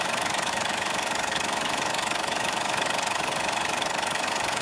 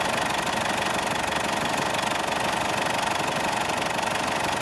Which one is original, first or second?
second